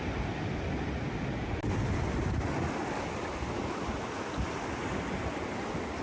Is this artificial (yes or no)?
no